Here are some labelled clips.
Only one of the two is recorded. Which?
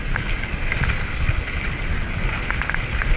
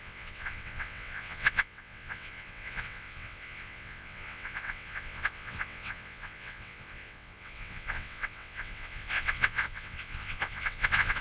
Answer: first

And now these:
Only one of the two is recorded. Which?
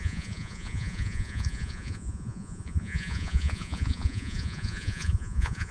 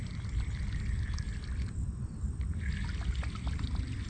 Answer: second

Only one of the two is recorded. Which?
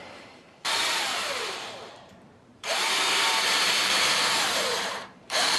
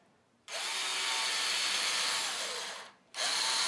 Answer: second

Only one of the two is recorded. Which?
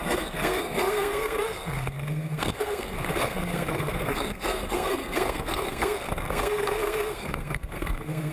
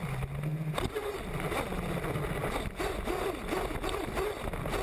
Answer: second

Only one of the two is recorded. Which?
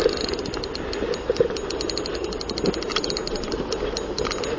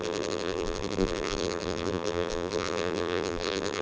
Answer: first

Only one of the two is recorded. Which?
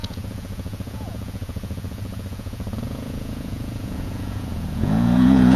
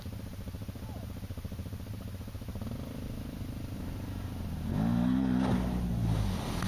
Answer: second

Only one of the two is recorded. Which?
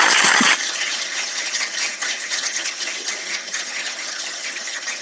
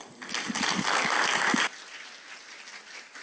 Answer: second